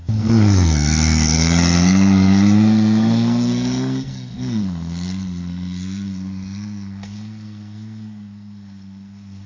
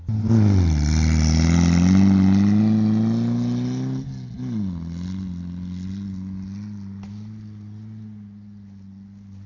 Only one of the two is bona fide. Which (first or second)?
second